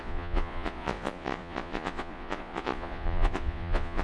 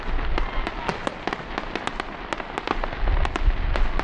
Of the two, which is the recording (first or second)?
second